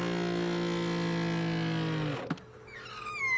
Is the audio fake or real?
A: real